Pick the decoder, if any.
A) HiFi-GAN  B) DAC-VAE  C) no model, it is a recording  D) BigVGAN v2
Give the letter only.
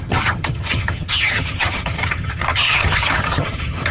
A